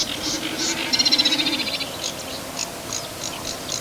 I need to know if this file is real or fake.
real